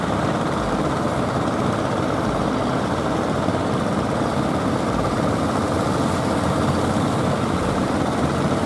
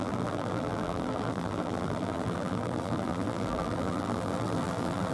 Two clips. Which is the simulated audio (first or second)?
second